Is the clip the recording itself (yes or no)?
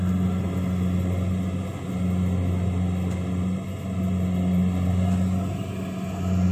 yes